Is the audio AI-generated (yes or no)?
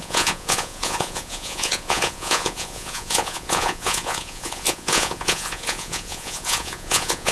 yes